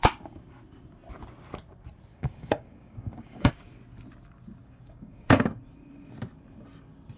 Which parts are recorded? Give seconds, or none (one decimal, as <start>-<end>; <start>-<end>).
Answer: 0.0-2.1; 3.5-4.6; 5.6-7.2